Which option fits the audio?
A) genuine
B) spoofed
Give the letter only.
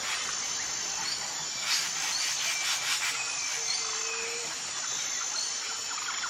A